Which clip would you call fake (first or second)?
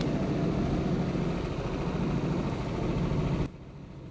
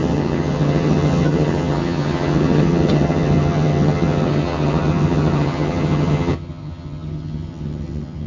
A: second